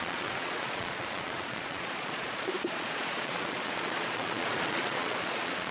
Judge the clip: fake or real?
fake